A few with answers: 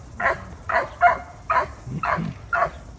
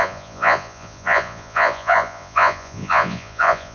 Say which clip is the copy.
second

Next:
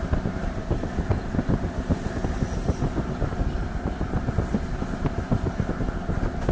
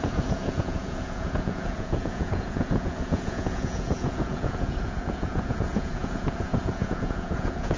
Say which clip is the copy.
second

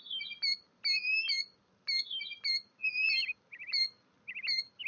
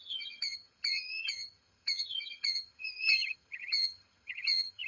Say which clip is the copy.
second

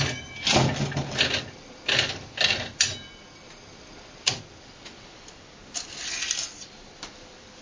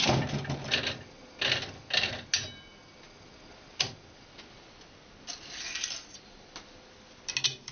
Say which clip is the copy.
first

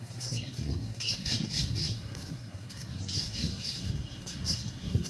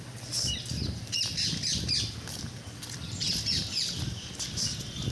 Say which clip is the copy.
first